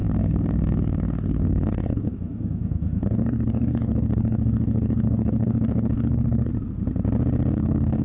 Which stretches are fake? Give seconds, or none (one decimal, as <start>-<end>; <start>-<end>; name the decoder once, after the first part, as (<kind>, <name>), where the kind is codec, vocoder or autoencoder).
0.0-6.5 (codec, DAC); 7.5-8.0